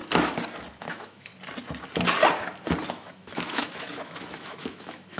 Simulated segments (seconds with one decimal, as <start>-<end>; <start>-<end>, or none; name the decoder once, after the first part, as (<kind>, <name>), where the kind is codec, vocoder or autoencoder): 0.7-1.3 (autoencoder, DAC-VAE); 2.9-5.2

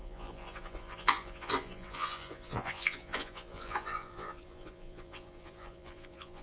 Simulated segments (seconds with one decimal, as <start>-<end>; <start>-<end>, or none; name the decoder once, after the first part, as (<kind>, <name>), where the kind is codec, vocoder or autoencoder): 0.0-6.4 (vocoder, Vocos)

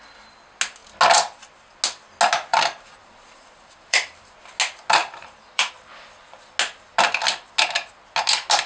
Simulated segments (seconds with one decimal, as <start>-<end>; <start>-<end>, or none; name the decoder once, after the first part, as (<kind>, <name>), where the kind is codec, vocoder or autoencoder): 2.5-4.2 (vocoder, BigVGAN v2); 5.0-5.7

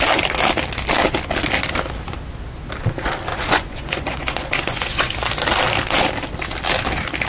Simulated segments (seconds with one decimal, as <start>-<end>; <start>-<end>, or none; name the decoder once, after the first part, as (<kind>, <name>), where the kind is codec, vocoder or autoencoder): 3.3-5.1 (vocoder, Vocos)